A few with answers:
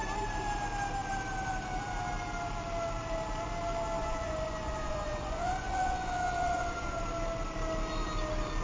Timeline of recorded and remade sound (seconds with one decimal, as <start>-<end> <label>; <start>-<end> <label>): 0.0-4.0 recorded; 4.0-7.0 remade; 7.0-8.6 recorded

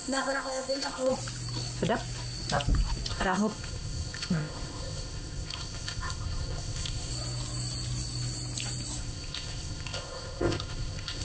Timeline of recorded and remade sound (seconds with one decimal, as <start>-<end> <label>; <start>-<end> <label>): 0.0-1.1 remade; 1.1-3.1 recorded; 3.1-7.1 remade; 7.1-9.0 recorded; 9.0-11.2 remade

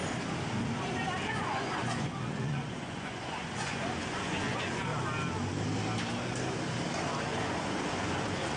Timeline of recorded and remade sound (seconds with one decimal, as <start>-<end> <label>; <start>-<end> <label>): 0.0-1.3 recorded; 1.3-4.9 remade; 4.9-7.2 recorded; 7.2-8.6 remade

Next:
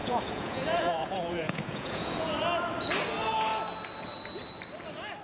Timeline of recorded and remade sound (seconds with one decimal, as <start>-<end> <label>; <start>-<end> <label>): 0.0-2.3 remade; 2.3-5.2 recorded

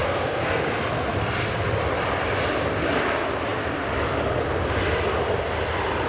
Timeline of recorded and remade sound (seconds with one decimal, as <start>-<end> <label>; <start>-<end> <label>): 0.0-0.6 remade; 0.6-6.1 recorded